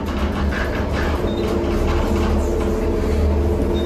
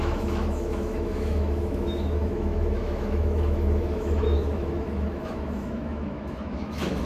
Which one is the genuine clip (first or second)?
first